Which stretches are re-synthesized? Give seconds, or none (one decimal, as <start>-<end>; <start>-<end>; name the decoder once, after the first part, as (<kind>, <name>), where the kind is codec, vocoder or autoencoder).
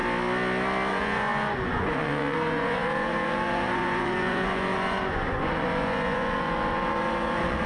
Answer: 0.9-7.7 (vocoder, Vocos)